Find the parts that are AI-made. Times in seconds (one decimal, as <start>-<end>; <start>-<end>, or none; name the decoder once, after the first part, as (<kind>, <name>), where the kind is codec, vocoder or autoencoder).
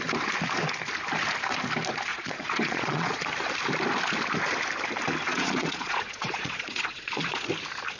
2.1-3.2 (vocoder, Vocos); 5.3-7.5